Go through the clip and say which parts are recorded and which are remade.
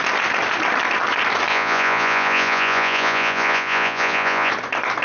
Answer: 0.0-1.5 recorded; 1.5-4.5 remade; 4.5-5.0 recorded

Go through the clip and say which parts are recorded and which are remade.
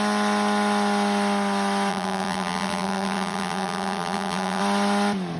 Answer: 0.0-1.9 recorded; 1.9-4.6 remade; 4.6-5.4 recorded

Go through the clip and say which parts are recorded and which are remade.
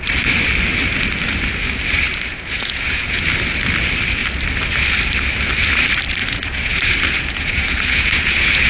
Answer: 0.0-2.3 recorded; 2.3-3.2 remade; 3.2-6.2 recorded; 6.2-8.7 remade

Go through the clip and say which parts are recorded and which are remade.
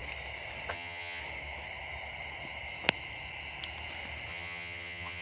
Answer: 0.0-0.7 recorded; 0.7-1.2 remade; 1.2-4.3 recorded; 4.3-5.2 remade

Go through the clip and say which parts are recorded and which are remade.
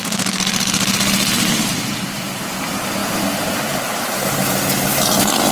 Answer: 0.0-5.5 recorded